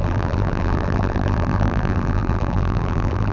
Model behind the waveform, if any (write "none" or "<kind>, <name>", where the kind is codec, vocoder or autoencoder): vocoder, BigVGAN v2